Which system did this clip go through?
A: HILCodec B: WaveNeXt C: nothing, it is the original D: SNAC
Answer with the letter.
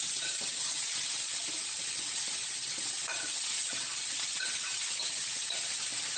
B